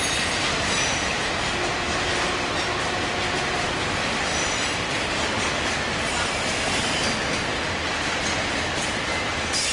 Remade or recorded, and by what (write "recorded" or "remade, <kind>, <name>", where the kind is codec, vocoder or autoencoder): recorded